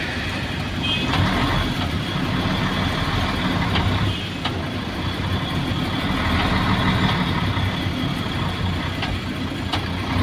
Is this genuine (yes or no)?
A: yes